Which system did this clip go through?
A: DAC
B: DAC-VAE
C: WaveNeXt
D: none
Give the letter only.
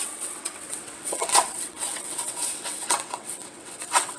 C